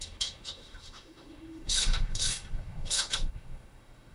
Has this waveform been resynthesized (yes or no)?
yes